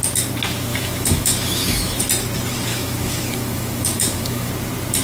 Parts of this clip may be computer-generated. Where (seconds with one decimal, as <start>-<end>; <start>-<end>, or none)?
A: 0.7-2.0; 2.7-4.5